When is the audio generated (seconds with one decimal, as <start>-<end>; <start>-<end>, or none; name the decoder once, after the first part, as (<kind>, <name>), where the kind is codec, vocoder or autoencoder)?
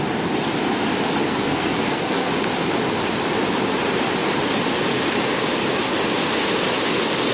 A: 1.2-2.3 (codec, SNAC)